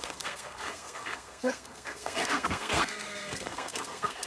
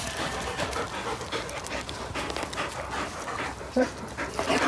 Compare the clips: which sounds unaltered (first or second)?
second